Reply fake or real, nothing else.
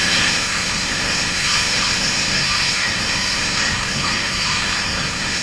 fake